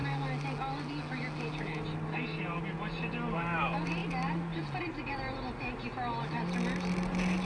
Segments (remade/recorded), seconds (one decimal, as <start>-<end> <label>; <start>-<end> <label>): 0.0-7.4 recorded